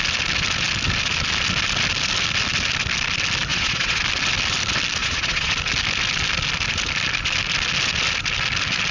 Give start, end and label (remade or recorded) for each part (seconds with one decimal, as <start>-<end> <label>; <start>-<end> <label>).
0.0-3.5 recorded; 3.5-4.0 remade; 4.0-5.0 recorded; 5.0-5.5 remade; 5.5-8.9 recorded